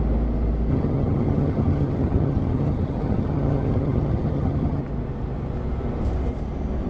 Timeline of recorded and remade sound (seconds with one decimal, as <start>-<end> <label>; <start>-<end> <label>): 0.0-0.7 recorded; 0.7-4.8 remade; 4.8-6.9 recorded